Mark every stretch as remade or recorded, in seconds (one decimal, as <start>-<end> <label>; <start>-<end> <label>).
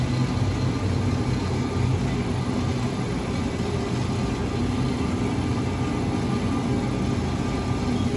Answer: 0.0-8.2 recorded